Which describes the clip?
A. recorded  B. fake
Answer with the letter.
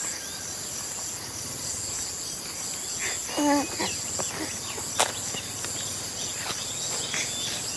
A